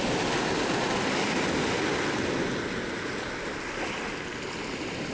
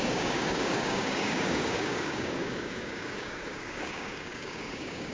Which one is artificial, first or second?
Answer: second